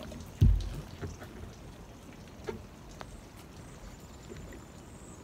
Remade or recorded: recorded